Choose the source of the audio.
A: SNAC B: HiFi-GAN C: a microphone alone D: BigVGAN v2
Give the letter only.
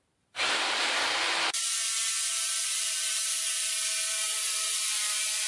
D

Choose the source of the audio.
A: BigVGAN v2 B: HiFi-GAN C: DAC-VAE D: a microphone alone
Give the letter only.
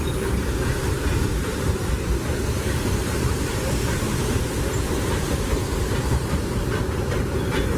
A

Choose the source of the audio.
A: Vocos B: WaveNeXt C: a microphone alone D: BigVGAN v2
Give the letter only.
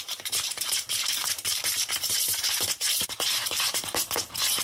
D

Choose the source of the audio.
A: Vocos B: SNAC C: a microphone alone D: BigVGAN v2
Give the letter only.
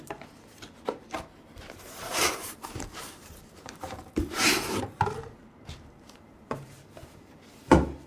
D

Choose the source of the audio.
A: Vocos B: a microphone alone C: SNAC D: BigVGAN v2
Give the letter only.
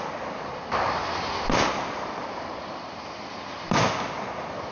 B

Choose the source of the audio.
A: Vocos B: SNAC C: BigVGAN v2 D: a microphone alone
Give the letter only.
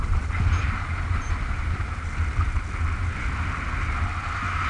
D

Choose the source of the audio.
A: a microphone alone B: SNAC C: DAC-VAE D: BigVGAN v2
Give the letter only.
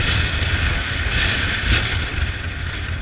A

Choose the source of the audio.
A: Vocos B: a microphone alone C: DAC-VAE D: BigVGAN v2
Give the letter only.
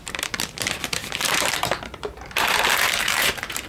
D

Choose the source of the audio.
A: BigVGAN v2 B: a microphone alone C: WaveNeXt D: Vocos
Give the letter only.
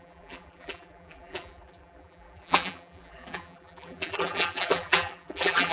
A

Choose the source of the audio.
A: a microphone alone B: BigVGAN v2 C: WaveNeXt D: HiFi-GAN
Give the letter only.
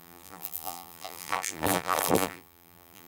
B